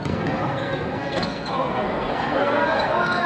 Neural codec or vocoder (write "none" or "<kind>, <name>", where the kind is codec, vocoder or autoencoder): codec, SNAC